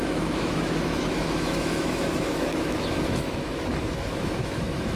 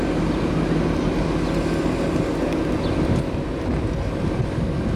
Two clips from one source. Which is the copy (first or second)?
first